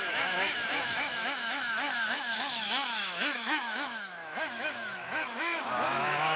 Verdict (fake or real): fake